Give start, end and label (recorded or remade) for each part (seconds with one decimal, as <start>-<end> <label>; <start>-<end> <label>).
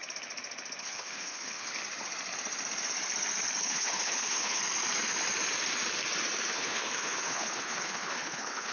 0.0-0.8 recorded; 0.8-1.8 remade; 1.8-3.6 recorded; 3.6-4.6 remade; 4.6-6.5 recorded; 6.5-8.7 remade